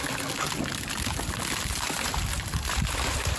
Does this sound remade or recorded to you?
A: recorded